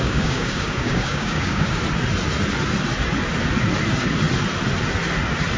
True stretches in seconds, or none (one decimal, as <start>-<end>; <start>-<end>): 1.8-5.6